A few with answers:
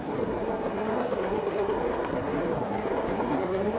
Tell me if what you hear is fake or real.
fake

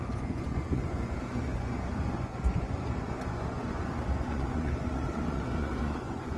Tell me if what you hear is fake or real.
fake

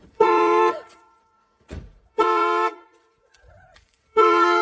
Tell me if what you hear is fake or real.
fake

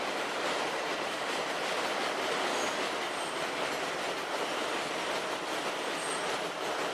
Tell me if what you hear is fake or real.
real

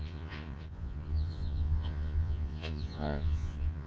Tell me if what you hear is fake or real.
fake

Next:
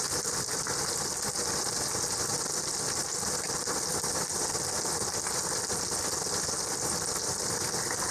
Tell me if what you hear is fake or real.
real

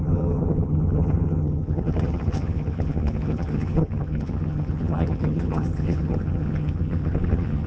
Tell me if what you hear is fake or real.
fake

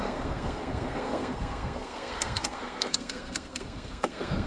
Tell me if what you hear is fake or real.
fake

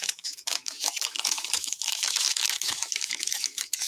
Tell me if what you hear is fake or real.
fake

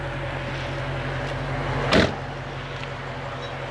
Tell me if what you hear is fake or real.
real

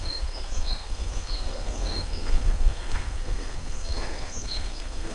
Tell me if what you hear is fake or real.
fake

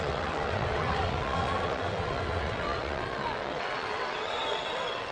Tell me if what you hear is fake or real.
fake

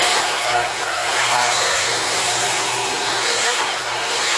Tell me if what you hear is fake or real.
fake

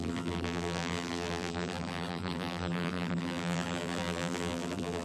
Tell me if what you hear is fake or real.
fake